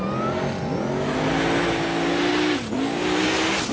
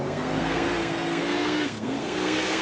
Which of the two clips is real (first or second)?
first